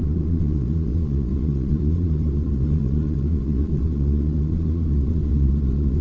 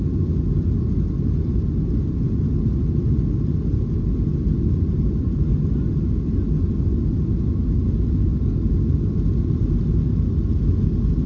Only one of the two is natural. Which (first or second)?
second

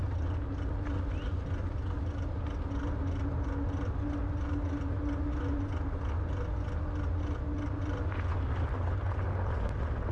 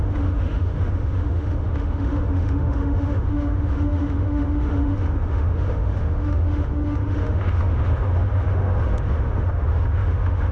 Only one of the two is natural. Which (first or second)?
first